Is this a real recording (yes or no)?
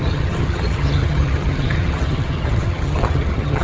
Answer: no